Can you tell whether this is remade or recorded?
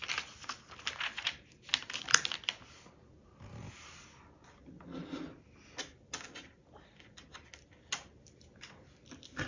recorded